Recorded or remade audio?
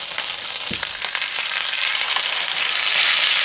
recorded